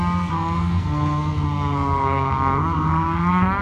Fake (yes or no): yes